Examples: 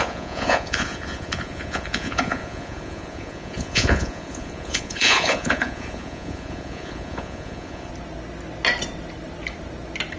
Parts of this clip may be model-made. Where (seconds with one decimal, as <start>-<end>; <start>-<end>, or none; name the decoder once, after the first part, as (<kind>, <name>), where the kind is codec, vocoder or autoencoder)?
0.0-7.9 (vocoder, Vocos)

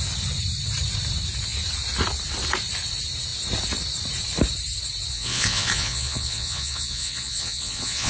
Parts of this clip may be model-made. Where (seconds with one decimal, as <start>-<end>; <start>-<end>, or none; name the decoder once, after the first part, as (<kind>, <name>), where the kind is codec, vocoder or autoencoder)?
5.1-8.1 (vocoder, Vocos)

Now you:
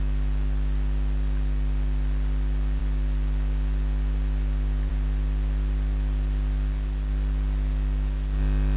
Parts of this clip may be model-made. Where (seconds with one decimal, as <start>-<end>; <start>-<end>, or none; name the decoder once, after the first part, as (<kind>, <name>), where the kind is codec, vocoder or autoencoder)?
none

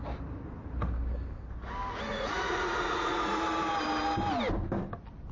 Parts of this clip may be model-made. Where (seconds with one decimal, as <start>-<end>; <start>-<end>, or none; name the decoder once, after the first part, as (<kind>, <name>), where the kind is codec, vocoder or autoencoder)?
2.1-3.4 (vocoder, Vocos)

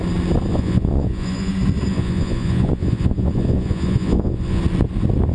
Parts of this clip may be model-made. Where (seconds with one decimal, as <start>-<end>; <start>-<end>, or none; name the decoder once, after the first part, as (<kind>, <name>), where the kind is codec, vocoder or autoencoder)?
0.5-1.5 (vocoder, Vocos); 1.9-4.6

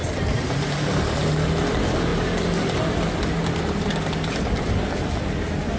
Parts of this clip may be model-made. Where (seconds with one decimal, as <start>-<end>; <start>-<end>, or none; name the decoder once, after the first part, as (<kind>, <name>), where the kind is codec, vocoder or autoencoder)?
none